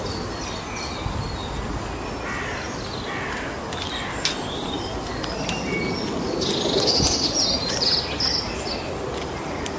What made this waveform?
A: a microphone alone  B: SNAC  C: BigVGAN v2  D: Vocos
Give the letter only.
A